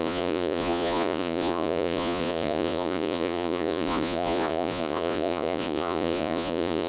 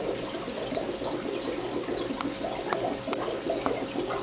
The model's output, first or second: first